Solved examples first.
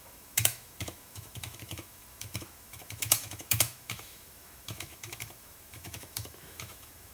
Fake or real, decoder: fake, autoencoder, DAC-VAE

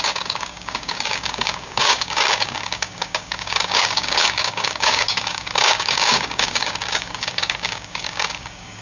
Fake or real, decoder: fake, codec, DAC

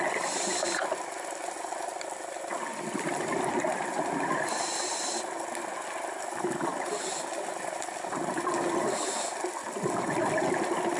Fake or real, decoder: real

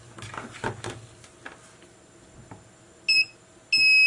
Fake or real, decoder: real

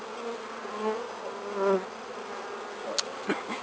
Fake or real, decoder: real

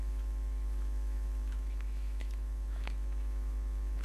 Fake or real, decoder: fake, autoencoder, DAC-VAE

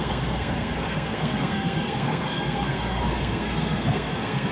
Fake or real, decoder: fake, codec, SNAC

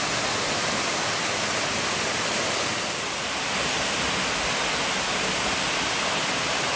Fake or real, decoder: real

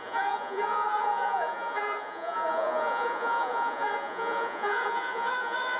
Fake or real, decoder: fake, vocoder, Vocos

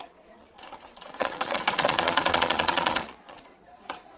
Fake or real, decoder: fake, vocoder, Vocos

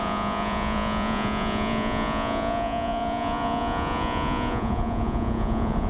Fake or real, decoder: fake, vocoder, Vocos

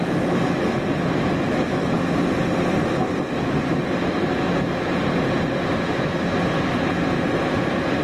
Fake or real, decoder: real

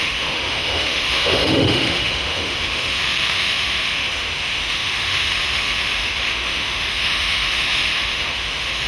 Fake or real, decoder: fake, autoencoder, DAC-VAE